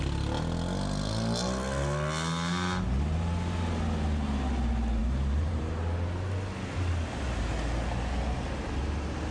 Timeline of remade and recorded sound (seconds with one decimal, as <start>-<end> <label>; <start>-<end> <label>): 0.0-5.0 recorded; 5.0-5.7 remade; 5.7-9.3 recorded